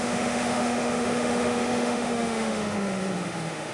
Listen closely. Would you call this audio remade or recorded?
remade